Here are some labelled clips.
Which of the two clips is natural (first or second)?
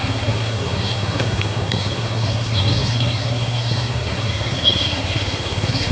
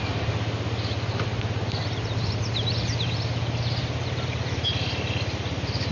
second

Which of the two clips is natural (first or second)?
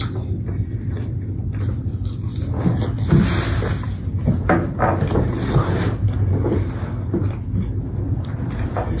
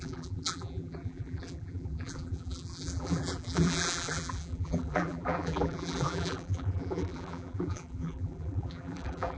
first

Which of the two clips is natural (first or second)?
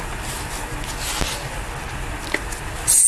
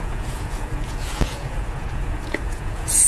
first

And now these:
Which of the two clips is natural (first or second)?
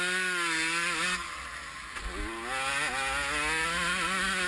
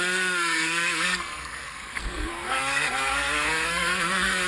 first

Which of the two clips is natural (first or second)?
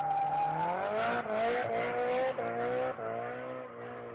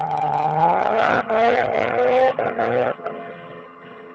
first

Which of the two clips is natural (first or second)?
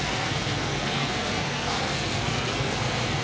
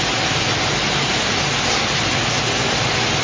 second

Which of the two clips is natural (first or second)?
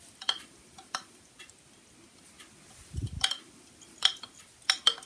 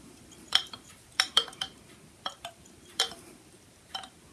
first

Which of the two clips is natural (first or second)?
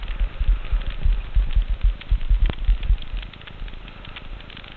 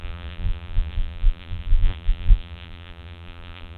first